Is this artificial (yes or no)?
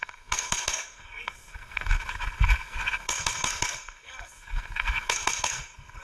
yes